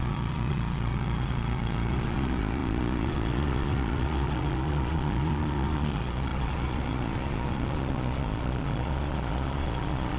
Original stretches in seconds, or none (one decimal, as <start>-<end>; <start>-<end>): none